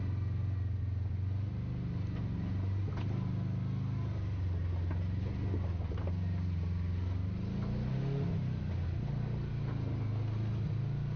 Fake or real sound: real